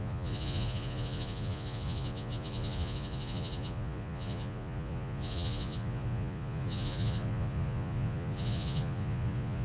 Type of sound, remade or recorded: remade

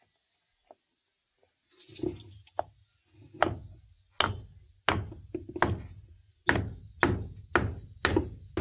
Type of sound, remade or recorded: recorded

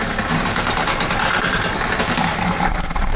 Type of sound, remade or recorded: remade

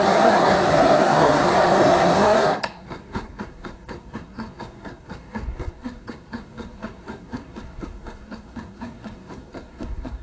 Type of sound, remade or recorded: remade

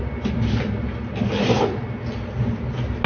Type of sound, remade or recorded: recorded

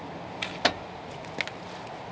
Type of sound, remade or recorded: recorded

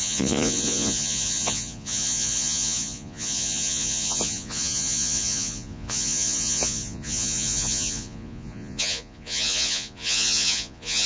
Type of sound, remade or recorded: remade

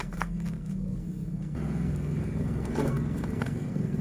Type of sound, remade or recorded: remade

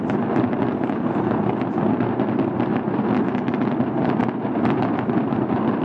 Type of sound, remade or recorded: recorded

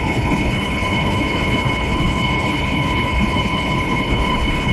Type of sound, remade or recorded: remade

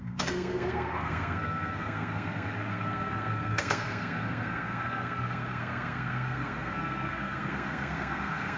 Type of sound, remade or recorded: remade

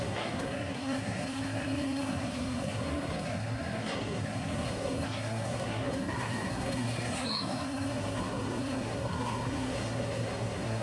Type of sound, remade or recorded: remade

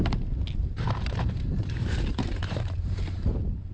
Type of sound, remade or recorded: remade